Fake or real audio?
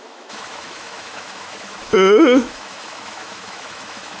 fake